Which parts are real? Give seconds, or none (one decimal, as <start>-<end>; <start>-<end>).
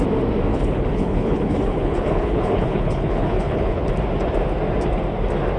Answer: 0.0-0.5; 3.9-5.6